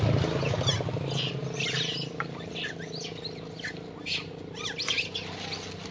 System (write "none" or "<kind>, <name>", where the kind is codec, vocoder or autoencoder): none